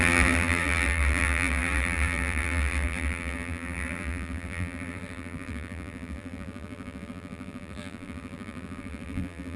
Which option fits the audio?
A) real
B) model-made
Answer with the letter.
B